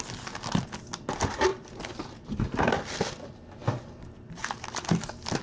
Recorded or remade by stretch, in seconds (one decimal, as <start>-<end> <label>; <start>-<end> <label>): 0.0-1.5 recorded; 1.5-2.7 remade; 2.7-3.6 recorded; 3.6-4.4 remade; 4.4-5.4 recorded